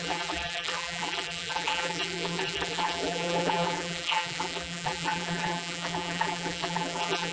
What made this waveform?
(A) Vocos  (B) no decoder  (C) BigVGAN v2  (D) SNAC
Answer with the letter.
C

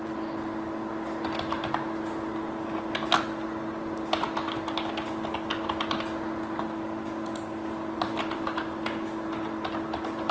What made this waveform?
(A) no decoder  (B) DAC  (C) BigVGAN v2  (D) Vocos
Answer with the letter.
A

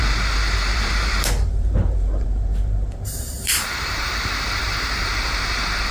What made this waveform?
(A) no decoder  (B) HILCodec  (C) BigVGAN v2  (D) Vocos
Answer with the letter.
C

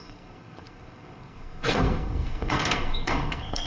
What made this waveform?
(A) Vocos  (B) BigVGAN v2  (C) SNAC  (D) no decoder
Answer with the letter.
C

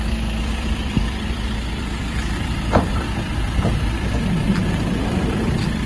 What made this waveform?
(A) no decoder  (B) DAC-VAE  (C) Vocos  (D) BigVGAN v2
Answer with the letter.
D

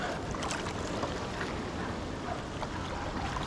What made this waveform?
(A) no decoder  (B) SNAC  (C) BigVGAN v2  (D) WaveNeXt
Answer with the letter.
A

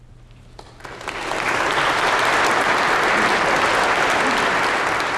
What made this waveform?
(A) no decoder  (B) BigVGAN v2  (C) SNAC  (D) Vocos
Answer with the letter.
A